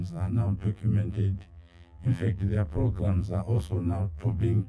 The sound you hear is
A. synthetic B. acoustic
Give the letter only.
A